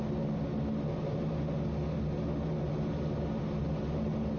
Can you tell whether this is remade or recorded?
recorded